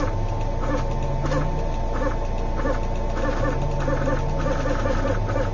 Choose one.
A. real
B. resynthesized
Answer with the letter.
A